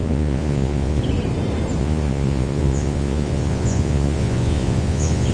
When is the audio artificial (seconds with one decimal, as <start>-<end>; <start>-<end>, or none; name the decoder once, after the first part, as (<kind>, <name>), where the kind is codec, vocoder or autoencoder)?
0.0-1.0 (vocoder, Vocos); 1.8-5.3